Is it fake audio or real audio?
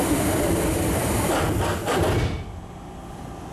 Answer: fake